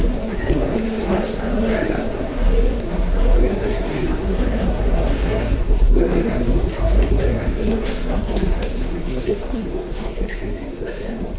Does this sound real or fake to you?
fake